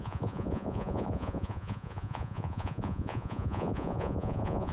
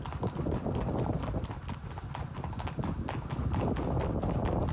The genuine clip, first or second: second